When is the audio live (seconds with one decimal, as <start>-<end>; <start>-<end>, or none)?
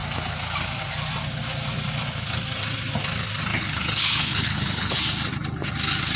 0.0-3.5; 5.0-6.2